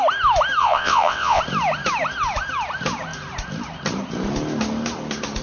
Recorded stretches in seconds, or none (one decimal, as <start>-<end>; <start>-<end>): 0.0-0.6; 1.4-5.4

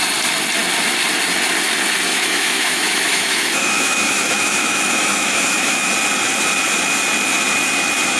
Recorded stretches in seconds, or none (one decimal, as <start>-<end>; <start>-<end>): 0.0-2.1; 5.9-8.2

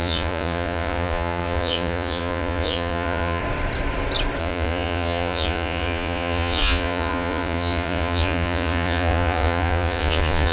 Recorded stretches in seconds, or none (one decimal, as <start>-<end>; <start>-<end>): 3.4-4.4

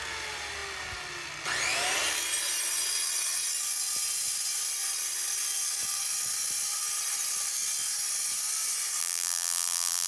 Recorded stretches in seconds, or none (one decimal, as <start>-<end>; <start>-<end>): 0.0-9.0

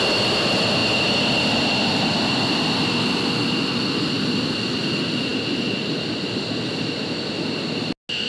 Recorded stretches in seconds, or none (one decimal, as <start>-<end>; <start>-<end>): 0.0-8.3